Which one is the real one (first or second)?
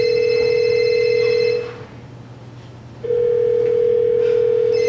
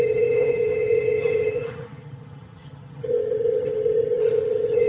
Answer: first